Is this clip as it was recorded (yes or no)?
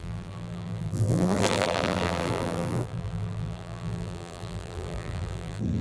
no